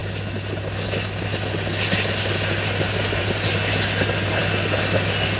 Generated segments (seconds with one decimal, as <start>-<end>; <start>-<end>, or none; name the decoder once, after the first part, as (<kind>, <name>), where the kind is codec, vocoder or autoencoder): none